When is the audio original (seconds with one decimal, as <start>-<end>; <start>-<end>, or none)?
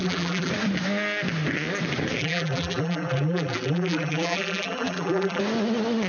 0.5-2.2; 5.4-6.1